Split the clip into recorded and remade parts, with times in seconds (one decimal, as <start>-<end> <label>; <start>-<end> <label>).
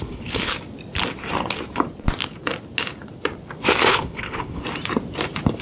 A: 0.0-0.5 remade; 0.5-3.9 recorded; 3.9-4.6 remade; 4.6-5.6 recorded